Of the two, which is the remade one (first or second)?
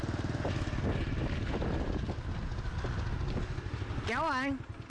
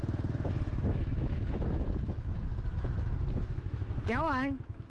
second